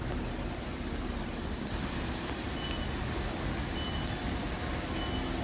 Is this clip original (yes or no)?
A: yes